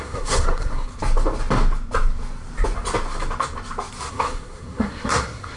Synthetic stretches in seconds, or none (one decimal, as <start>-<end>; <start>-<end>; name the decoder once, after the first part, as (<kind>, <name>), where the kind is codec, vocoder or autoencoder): 0.0-0.9 (codec, SNAC); 4.1-5.6